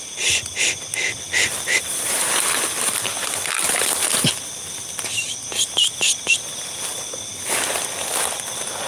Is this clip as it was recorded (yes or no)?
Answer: yes